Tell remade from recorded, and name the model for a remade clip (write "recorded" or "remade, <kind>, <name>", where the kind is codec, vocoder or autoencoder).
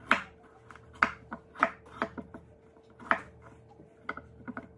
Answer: recorded